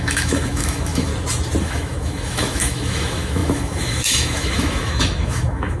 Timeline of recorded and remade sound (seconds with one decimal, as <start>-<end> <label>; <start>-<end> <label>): 0.0-1.1 remade; 1.1-1.6 recorded; 1.6-5.8 remade